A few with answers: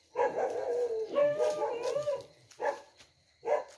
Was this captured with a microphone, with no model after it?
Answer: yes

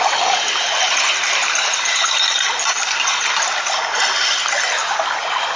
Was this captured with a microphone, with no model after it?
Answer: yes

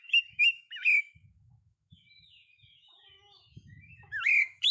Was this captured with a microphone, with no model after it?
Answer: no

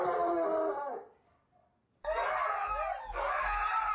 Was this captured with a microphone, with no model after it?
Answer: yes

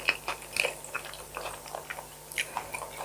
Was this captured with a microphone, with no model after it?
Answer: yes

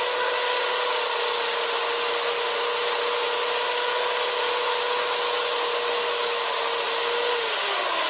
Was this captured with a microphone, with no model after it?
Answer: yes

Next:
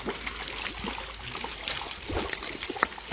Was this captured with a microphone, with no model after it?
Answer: yes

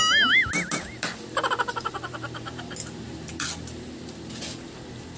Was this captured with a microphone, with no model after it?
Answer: yes